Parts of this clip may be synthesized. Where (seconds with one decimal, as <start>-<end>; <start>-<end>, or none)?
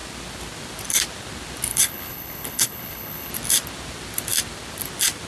1.7-3.3